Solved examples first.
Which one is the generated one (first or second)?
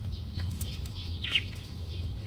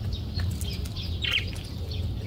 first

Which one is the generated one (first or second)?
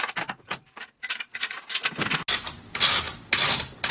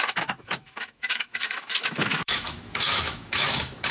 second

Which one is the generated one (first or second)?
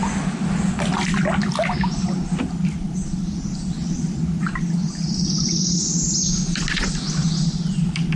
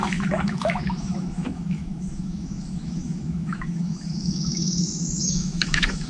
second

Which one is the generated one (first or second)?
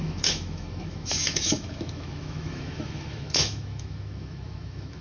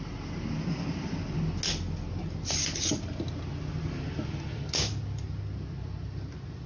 first